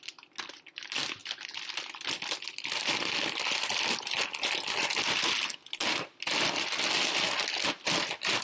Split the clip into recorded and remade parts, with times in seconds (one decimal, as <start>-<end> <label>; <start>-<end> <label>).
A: 0.0-8.4 recorded